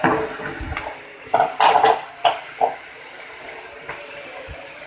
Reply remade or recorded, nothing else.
recorded